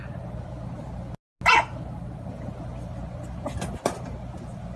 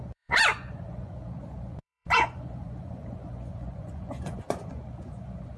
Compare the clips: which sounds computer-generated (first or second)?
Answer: second